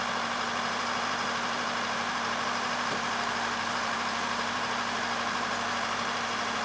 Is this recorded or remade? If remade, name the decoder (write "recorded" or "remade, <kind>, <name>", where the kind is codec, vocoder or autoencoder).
remade, vocoder, BigVGAN v2